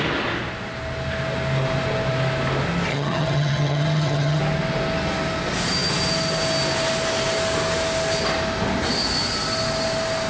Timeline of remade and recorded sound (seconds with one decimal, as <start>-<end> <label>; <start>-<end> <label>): 0.0-2.9 recorded; 2.9-4.4 remade; 4.4-10.3 recorded